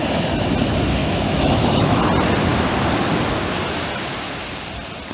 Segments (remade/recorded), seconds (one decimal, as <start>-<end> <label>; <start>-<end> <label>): 0.0-1.0 recorded; 1.0-2.0 remade; 2.0-5.1 recorded